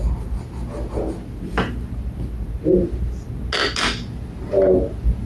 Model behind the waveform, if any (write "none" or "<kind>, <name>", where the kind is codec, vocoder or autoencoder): none